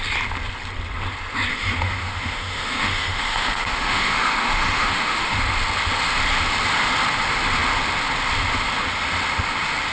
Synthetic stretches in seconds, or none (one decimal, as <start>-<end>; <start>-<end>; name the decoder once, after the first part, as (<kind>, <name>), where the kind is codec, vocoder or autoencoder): 1.5-5.4 (autoencoder, DAC-VAE)